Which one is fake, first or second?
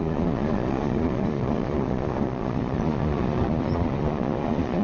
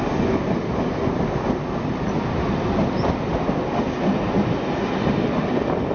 first